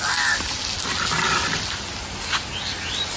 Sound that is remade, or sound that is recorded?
recorded